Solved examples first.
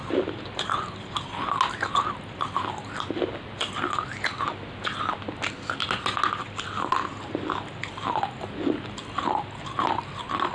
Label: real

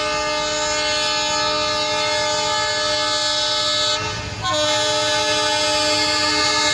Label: real